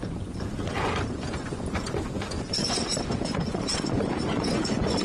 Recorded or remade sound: remade